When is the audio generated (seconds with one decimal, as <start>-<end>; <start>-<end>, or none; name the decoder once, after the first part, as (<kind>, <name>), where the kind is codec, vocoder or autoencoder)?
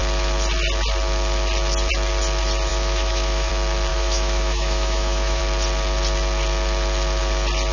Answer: 2.7-3.5 (autoencoder, DAC-VAE); 3.9-5.4